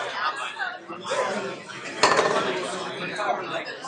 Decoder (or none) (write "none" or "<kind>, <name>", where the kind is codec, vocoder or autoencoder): vocoder, BigVGAN v2